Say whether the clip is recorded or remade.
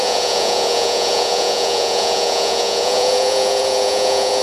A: remade